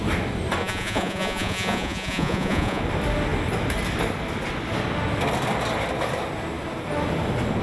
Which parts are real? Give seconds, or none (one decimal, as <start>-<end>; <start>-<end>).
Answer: 0.0-0.6; 2.8-7.6

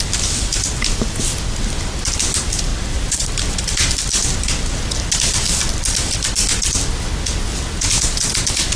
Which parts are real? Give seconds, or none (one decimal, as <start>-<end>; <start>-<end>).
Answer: 0.0-8.8

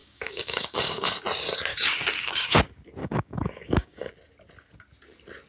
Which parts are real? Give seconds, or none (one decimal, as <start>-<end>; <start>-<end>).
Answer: 1.1-1.7; 2.6-3.0; 4.1-5.5

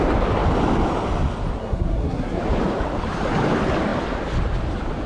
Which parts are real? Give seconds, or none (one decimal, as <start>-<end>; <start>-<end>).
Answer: 0.0-1.6; 2.4-5.1